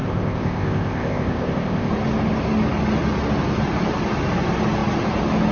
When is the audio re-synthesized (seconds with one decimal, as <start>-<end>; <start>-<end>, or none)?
0.0-1.9